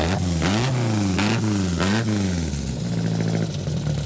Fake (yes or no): no